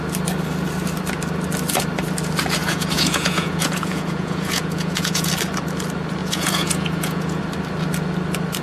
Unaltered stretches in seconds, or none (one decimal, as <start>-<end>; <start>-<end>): 0.0-2.6; 5.3-6.2; 7.4-8.6